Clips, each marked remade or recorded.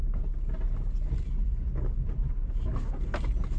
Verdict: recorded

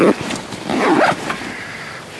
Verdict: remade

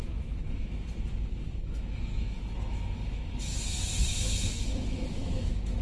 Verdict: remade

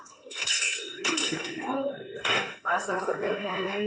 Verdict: remade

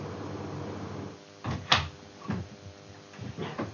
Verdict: recorded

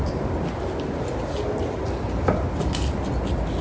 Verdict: recorded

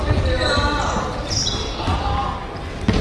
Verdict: recorded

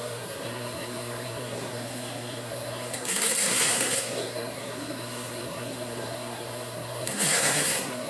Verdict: remade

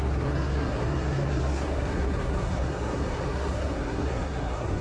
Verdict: remade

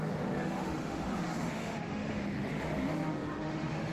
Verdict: remade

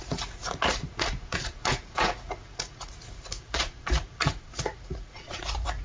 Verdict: remade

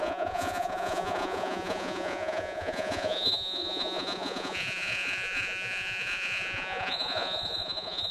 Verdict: remade